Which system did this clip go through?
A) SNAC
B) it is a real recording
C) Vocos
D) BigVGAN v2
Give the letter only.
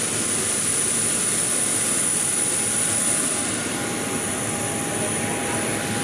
B